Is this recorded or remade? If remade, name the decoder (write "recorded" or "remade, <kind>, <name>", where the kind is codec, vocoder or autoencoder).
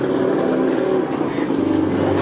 recorded